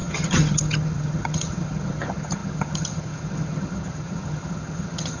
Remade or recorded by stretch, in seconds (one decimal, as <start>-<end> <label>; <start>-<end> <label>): 0.0-5.2 remade